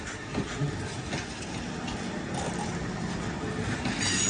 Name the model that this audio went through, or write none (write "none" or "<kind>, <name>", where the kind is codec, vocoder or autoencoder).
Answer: none